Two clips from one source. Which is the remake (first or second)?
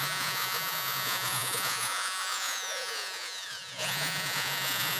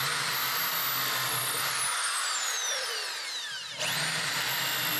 first